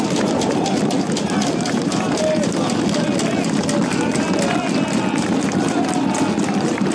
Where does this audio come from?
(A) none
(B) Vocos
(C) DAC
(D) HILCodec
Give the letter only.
A